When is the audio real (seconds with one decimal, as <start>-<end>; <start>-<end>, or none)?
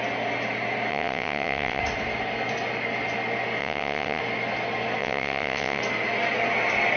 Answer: 0.0-0.9; 1.8-3.6; 4.2-5.0; 5.8-7.0